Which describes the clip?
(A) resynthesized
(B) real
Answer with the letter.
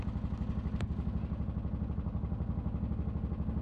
B